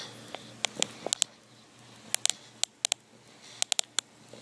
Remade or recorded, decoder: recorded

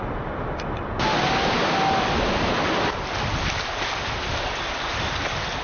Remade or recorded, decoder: recorded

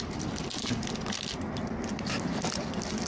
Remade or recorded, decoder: recorded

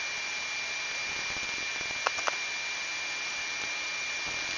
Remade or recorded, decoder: recorded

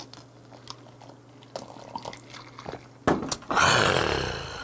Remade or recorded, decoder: recorded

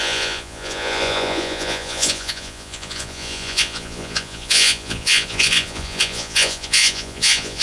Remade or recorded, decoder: remade, vocoder, Vocos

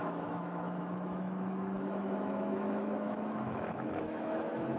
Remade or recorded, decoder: remade, autoencoder, DAC-VAE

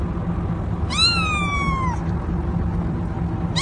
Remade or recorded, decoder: recorded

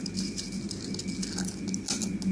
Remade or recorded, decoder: recorded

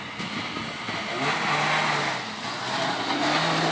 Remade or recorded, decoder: recorded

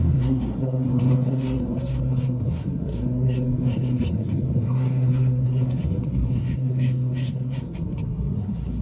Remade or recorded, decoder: remade, codec, SNAC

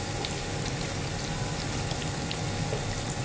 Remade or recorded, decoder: recorded